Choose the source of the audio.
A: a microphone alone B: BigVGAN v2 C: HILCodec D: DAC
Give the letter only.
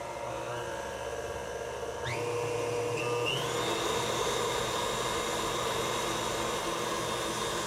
A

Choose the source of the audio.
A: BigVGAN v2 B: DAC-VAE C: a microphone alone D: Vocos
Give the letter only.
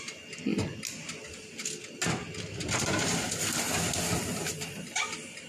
C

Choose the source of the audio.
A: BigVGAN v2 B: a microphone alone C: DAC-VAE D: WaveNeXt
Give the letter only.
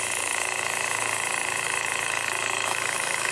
C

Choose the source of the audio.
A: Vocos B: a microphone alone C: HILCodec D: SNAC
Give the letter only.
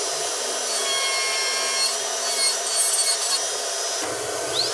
B